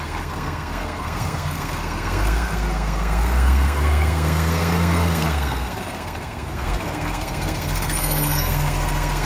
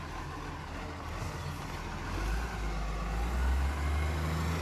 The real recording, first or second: second